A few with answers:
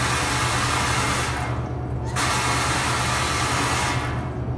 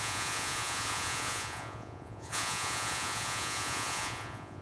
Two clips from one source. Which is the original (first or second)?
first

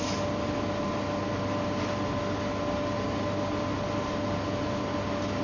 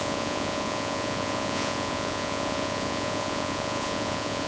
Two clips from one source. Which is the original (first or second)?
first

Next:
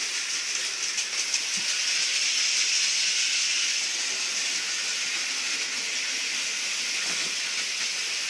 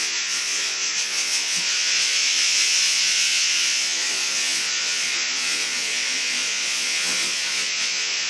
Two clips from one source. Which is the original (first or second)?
first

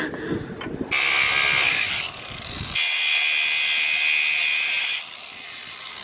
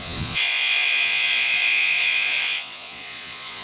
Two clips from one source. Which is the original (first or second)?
first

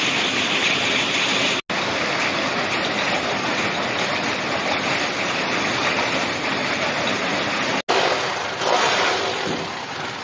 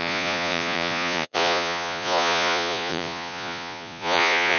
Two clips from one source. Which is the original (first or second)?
first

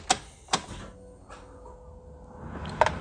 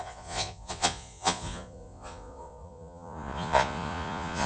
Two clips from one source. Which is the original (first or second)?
first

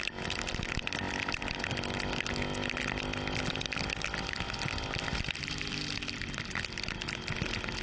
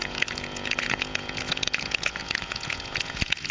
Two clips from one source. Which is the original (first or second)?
first